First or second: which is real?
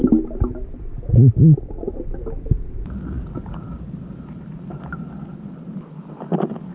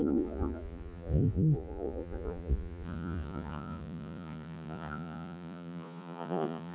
first